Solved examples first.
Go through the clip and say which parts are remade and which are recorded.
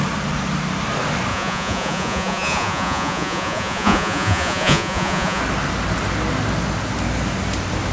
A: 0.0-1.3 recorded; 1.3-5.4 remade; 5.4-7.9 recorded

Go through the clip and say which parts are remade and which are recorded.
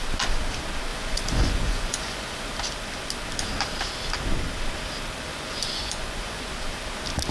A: 0.0-0.9 recorded; 0.9-2.5 remade; 2.5-5.3 recorded; 5.3-6.5 remade; 6.5-7.3 recorded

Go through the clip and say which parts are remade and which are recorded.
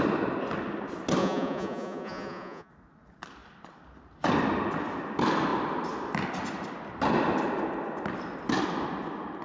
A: 0.0-1.2 recorded; 1.2-2.7 remade; 2.7-9.4 recorded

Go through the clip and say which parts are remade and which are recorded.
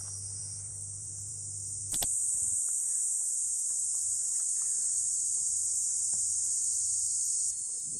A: 0.0-2.1 remade; 2.1-3.7 recorded; 3.7-8.0 remade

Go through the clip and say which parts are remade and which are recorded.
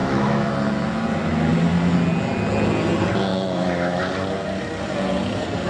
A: 0.0-0.5 remade; 0.5-3.3 recorded; 3.3-4.0 remade; 4.0-5.7 recorded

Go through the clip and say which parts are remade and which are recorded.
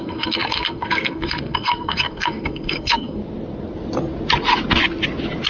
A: 0.0-3.2 remade; 3.2-5.5 recorded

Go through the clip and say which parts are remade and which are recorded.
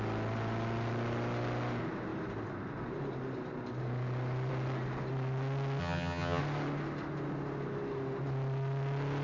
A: 0.0-5.8 recorded; 5.8-6.4 remade; 6.4-9.2 recorded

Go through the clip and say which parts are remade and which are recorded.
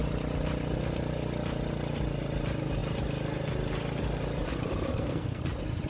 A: 0.0-4.9 recorded; 4.9-5.4 remade; 5.4-5.9 recorded